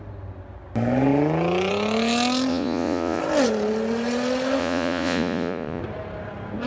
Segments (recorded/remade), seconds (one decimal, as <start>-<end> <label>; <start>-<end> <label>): 0.0-2.5 recorded; 2.5-3.2 remade; 3.2-4.6 recorded; 4.6-5.8 remade; 5.8-6.7 recorded